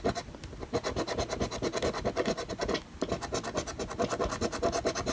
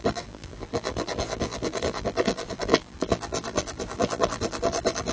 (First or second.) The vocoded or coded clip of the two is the second